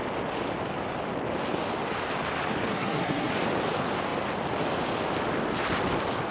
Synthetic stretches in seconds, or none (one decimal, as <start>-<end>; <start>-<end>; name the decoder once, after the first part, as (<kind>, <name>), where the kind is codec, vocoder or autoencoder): 2.7-3.3 (codec, SNAC)